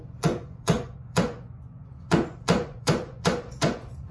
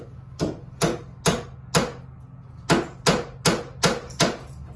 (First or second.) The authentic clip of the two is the second